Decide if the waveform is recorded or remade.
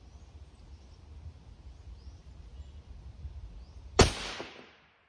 recorded